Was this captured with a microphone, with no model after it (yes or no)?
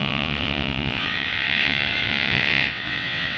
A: no